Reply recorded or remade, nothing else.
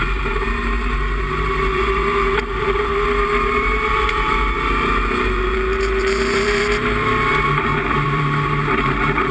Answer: remade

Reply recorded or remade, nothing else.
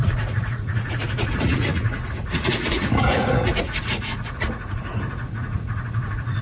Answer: remade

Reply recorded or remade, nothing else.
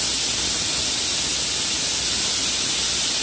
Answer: recorded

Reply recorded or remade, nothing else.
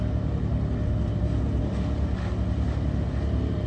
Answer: recorded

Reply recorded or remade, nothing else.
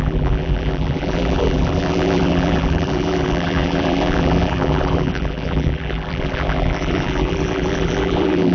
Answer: remade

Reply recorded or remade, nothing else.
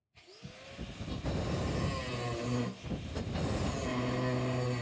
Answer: recorded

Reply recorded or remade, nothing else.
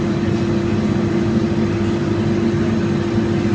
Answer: recorded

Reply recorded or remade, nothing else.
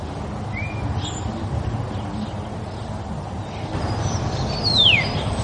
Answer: recorded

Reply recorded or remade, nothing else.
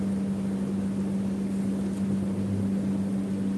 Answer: recorded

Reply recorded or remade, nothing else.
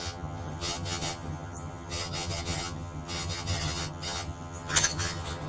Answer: remade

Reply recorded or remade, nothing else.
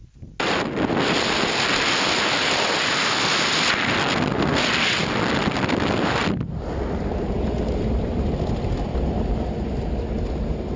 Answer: recorded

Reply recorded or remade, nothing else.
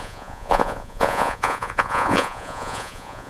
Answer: remade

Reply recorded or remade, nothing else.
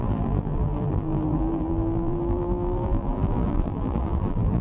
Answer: remade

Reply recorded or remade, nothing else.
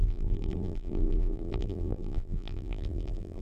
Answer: remade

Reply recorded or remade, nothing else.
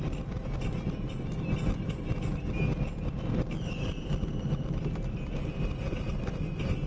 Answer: recorded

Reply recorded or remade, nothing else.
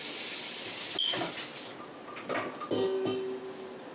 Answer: recorded